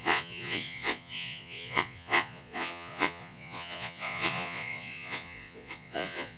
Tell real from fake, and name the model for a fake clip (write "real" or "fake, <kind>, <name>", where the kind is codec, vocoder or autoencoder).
fake, vocoder, Vocos